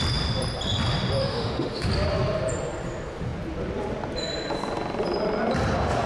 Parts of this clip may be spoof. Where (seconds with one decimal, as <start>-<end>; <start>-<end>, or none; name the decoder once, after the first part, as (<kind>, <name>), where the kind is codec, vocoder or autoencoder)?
1.2-1.9 (autoencoder, DAC-VAE)